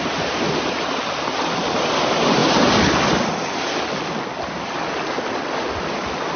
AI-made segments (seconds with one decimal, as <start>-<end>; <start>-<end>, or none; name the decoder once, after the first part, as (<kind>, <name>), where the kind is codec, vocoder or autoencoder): none